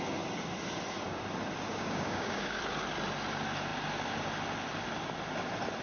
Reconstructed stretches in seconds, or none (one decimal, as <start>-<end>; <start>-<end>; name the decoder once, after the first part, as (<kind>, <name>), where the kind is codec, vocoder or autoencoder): 1.7-2.6 (codec, DAC)